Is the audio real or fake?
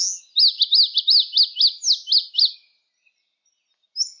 real